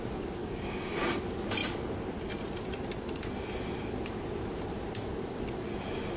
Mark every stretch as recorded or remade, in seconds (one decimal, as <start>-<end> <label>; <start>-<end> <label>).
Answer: 0.0-0.4 recorded; 0.4-1.2 remade; 1.2-6.2 recorded